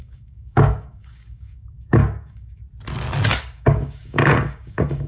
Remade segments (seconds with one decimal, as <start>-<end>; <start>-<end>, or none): 0.0-2.6; 3.4-5.1